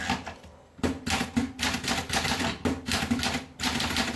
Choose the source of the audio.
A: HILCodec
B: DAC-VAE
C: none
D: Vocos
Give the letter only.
C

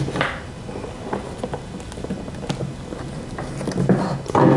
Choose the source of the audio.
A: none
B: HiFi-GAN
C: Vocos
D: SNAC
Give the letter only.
A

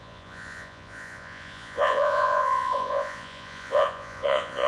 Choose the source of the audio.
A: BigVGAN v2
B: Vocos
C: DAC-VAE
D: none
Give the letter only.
B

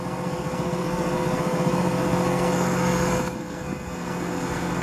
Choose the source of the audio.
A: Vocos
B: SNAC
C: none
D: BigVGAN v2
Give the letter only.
B